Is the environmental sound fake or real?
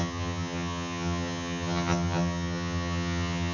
fake